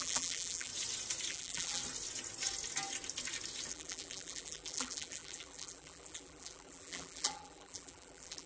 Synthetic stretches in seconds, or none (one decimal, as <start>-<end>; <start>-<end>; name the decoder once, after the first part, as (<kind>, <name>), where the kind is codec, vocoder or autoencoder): 0.0-0.7 (vocoder, BigVGAN v2); 1.3-1.8; 3.7-8.5